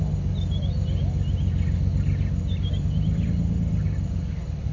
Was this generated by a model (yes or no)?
no